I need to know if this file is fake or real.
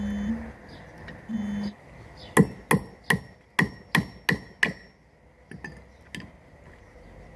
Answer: real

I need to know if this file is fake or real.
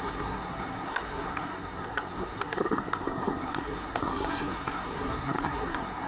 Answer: fake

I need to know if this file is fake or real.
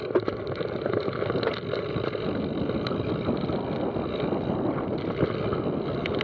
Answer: real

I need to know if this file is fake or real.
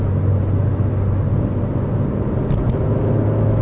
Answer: real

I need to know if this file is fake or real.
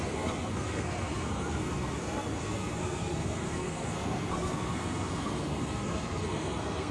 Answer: fake